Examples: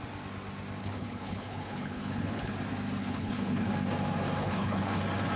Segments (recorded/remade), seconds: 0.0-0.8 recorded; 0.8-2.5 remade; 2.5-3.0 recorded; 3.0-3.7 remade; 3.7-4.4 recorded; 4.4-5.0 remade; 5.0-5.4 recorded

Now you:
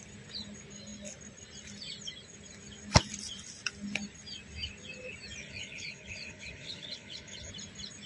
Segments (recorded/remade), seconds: 0.0-5.4 recorded; 5.4-7.5 remade; 7.5-8.1 recorded

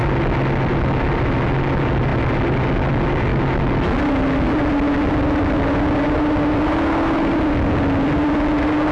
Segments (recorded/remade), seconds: 0.0-8.9 recorded

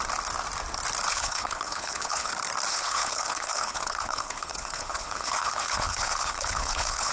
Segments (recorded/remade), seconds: 0.0-1.1 recorded; 1.1-2.3 remade; 2.3-2.7 recorded; 2.7-7.1 remade

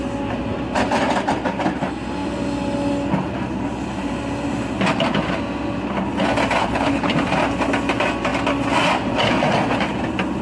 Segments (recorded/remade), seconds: 0.0-6.6 recorded; 6.6-7.1 remade; 7.1-10.4 recorded